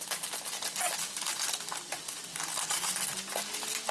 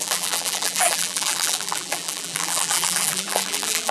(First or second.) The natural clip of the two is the first